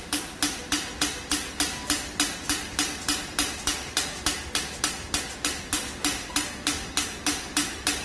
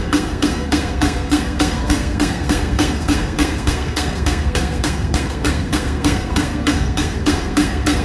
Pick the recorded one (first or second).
first